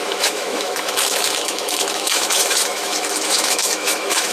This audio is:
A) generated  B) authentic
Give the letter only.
A